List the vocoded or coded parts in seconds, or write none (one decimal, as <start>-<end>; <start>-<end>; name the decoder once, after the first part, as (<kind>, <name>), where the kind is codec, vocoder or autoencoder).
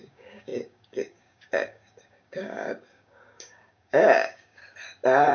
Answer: 0.0-4.6 (codec, DAC)